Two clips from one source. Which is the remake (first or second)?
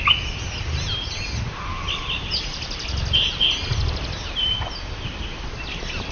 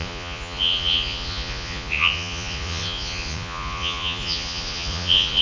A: second